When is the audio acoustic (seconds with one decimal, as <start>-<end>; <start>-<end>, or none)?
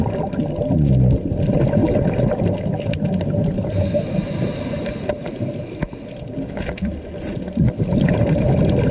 0.0-8.9